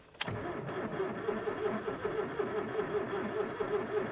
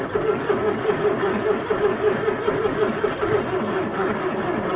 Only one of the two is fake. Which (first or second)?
second